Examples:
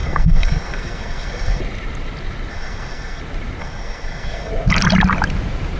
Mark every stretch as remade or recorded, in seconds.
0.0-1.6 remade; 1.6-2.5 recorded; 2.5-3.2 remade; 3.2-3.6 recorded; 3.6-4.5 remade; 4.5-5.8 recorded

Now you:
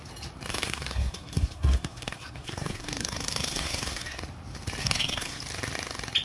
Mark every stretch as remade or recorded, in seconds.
0.0-0.5 recorded; 0.5-4.2 remade; 4.2-4.8 recorded; 4.8-5.4 remade; 5.4-6.2 recorded

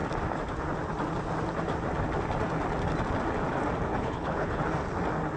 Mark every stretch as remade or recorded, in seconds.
0.0-3.9 recorded; 3.9-4.6 remade; 4.6-5.4 recorded

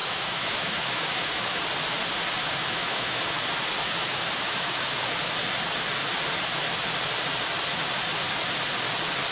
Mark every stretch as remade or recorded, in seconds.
0.0-1.6 remade; 1.6-2.4 recorded; 2.4-3.2 remade; 3.2-3.8 recorded; 3.8-5.0 remade; 5.0-9.3 recorded

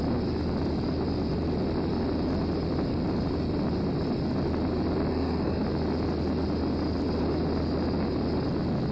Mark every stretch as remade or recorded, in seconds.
0.0-5.1 recorded; 5.1-5.6 remade; 5.6-8.9 recorded